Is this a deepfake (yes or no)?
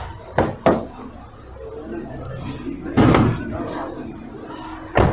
no